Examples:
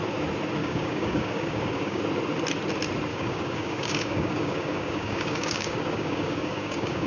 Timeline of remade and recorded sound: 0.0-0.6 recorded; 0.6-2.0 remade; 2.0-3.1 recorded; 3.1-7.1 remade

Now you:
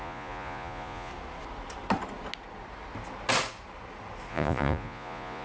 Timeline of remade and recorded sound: 0.0-1.1 remade; 1.1-4.3 recorded; 4.3-5.4 remade

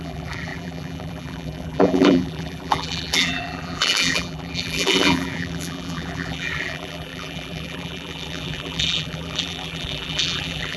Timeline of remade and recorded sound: 0.0-10.8 remade

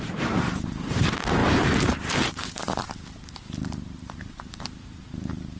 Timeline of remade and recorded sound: 0.0-5.6 remade